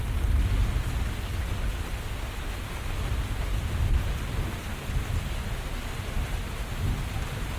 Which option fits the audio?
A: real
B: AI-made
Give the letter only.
A